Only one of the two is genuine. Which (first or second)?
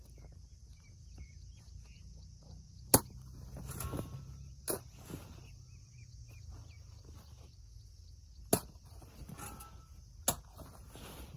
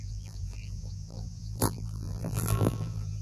first